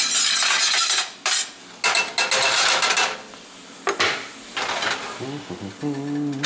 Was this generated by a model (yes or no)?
no